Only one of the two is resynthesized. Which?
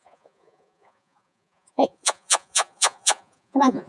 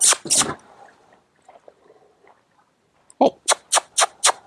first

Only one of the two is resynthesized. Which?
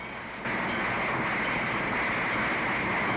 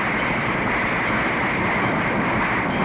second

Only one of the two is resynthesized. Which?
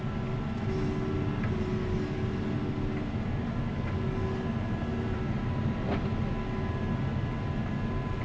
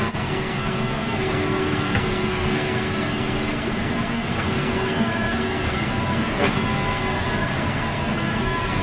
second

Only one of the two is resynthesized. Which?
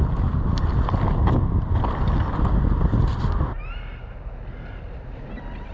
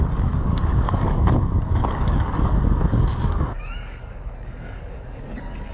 second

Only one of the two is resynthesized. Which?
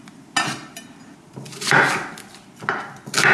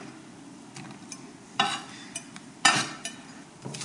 second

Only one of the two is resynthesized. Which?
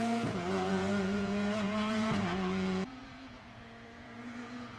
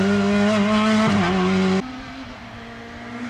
first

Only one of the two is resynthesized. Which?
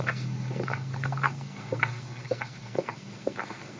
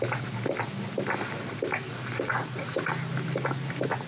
first